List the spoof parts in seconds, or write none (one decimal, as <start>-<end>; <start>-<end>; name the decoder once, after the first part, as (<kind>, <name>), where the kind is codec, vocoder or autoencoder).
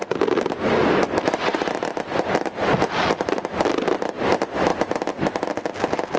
none